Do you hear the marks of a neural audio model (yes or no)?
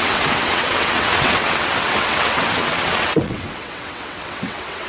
yes